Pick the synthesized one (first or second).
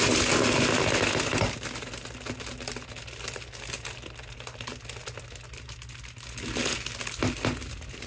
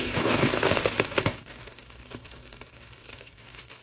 second